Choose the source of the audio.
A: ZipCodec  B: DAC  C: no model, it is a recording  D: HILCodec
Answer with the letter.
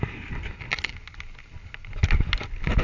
C